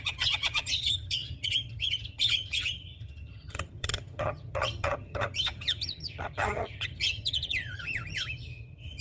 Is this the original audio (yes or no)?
no